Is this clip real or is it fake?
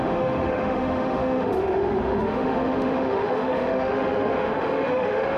fake